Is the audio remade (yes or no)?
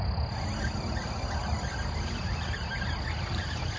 no